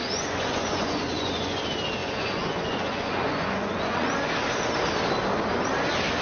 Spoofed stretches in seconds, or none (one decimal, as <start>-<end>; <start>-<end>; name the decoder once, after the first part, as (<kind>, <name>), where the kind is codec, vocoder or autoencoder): 0.0-1.6 (vocoder, Vocos); 2.0-4.1